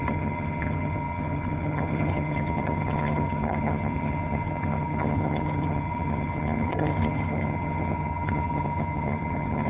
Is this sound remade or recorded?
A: remade